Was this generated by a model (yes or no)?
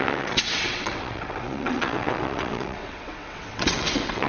yes